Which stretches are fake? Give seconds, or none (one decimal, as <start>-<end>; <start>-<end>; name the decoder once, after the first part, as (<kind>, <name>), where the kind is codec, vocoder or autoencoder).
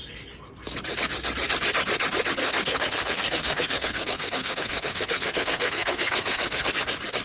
2.4-6.7 (codec, SNAC)